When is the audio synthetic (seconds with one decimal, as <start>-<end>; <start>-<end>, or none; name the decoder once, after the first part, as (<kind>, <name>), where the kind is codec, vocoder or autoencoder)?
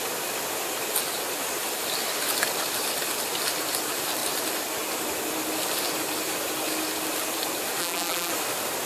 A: 7.8-8.3 (vocoder, BigVGAN v2)